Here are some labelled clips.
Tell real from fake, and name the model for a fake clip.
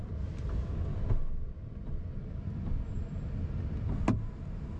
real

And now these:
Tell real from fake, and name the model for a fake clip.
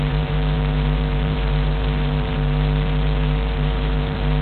fake, vocoder, BigVGAN v2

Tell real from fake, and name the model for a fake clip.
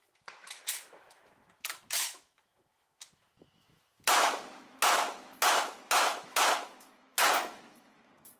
fake, autoencoder, DAC-VAE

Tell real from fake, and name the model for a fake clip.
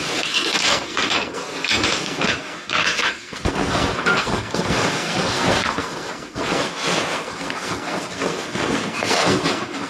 fake, codec, SNAC